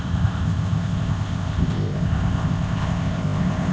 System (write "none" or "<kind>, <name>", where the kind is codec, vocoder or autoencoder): codec, ZipCodec